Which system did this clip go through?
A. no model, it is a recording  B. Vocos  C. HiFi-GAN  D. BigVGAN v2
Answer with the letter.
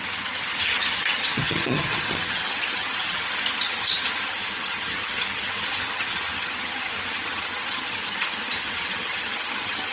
C